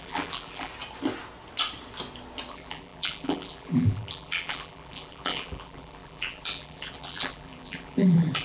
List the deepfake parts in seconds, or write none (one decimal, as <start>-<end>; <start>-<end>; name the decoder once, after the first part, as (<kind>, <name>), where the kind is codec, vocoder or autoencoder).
0.0-0.7 (vocoder, BigVGAN v2); 2.5-8.4